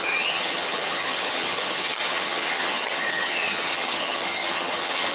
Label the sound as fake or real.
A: fake